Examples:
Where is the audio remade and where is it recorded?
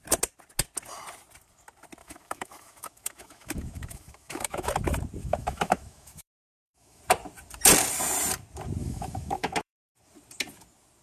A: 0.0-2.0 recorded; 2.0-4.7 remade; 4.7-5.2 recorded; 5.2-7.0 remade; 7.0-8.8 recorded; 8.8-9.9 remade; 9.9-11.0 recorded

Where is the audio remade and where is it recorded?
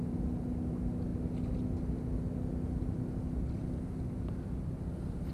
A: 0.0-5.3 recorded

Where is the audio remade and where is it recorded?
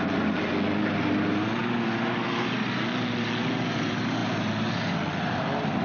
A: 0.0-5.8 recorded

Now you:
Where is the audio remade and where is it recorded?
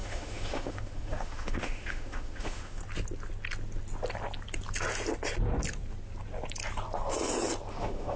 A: 0.0-2.8 remade; 2.8-7.7 recorded; 7.7-8.2 remade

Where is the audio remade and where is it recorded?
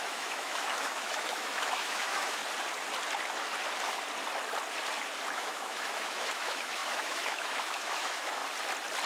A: 0.0-2.4 remade; 2.4-5.3 recorded; 5.3-8.4 remade; 8.4-9.1 recorded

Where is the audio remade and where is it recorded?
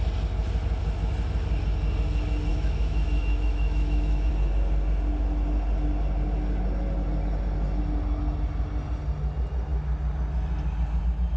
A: 0.0-2.5 recorded; 2.5-4.3 remade; 4.3-11.4 recorded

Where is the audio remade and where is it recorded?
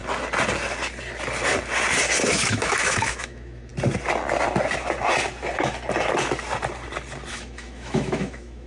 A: 0.0-2.3 recorded; 2.3-3.7 remade; 3.7-7.3 recorded; 7.3-8.7 remade